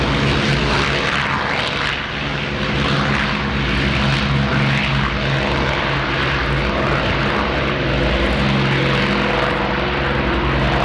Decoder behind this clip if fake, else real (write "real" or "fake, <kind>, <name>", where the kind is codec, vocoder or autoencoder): real